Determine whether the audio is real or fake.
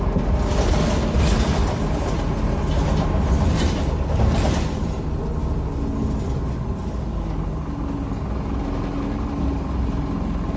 real